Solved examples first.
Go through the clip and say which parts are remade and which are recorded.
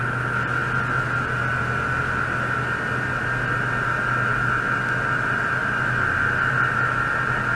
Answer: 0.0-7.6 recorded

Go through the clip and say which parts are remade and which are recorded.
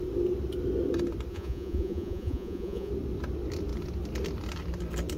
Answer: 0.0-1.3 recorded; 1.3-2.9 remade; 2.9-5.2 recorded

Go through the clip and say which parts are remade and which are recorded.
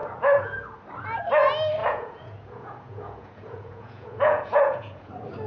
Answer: 0.0-1.8 recorded; 1.8-5.1 remade; 5.1-5.5 recorded